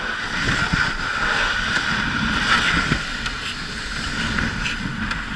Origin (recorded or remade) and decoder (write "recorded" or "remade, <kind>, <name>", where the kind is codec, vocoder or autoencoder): recorded